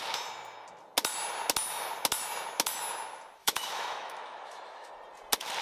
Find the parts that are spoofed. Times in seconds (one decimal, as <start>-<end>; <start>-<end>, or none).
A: 3.4-4.9